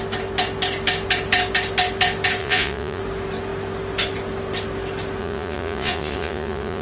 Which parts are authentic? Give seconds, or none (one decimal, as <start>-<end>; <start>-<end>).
0.0-2.4; 3.0-5.2